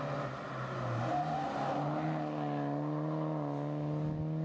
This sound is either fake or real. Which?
real